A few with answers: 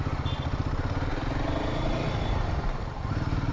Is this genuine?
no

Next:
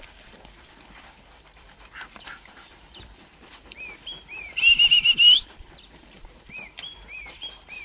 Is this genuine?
no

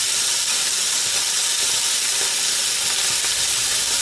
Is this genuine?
yes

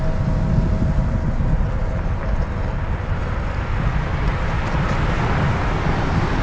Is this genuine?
yes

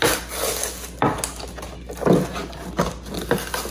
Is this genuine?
yes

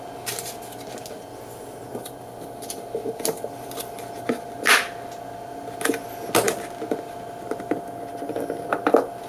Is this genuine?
yes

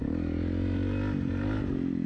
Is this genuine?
yes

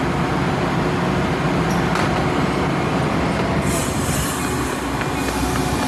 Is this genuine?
yes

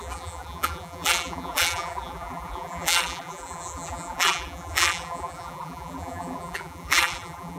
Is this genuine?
no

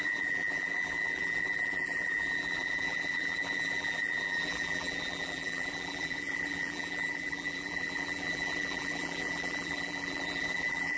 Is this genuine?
no